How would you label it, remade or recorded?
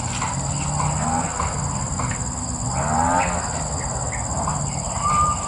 recorded